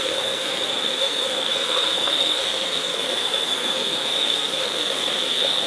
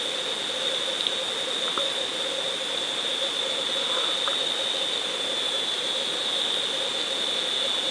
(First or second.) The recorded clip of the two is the second